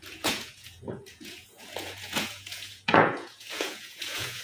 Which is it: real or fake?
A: fake